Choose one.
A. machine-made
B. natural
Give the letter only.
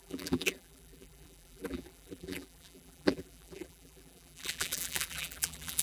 A